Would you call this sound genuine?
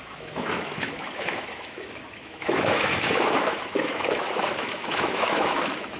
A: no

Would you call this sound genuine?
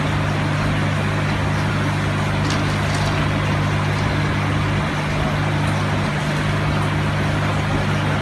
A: yes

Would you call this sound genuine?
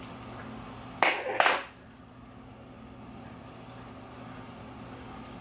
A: yes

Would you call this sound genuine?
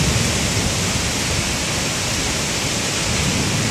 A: yes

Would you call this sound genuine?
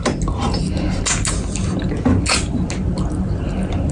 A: yes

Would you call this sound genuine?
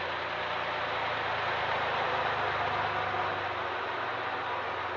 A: yes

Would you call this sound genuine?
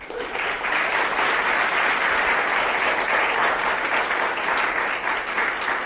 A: yes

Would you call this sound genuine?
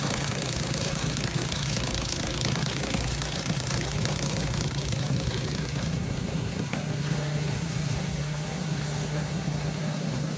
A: no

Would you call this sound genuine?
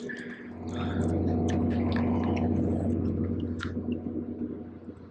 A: yes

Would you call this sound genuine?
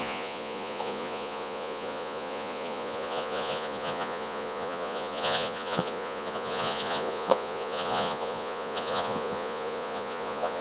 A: no